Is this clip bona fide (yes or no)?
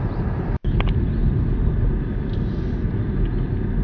yes